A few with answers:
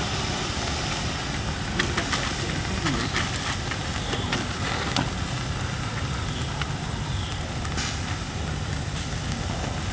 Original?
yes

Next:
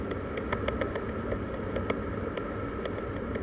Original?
yes